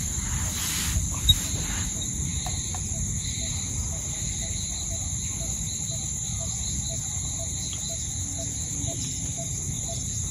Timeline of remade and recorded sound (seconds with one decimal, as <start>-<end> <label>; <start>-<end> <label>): 0.0-10.3 recorded